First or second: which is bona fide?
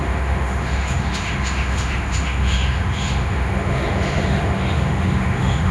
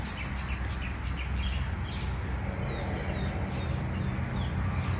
second